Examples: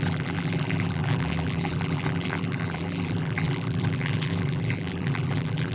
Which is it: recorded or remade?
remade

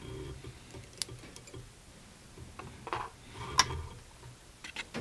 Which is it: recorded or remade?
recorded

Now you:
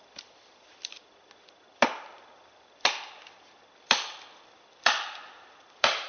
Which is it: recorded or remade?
remade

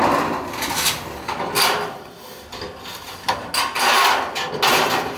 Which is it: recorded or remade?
recorded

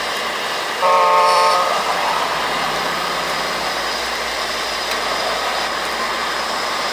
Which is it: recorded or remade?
remade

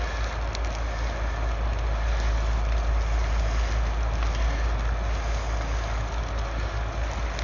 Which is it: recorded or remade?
recorded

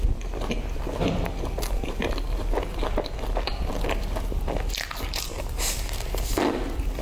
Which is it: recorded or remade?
remade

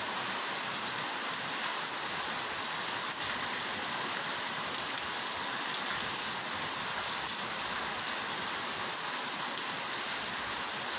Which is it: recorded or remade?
remade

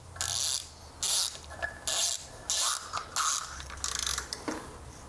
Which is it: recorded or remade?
recorded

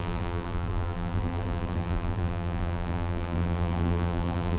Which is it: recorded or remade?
remade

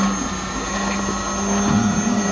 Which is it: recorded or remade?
recorded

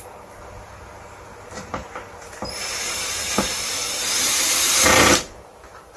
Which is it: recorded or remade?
remade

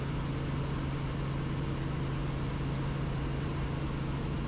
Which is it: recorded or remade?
recorded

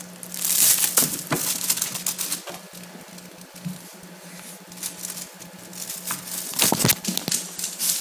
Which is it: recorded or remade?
recorded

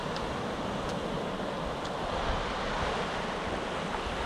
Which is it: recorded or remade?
recorded